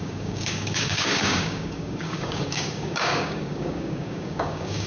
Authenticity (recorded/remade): remade